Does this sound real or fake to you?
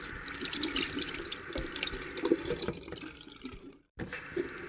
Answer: fake